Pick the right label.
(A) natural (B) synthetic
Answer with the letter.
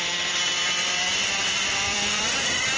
B